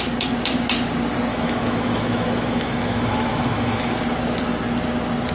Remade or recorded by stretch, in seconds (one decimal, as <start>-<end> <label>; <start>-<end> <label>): 0.0-1.3 recorded; 1.3-4.0 remade; 4.0-5.3 recorded